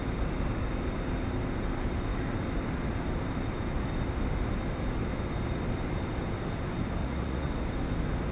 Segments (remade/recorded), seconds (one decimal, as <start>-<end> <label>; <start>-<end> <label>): 0.0-7.0 recorded; 7.0-7.5 remade; 7.5-8.3 recorded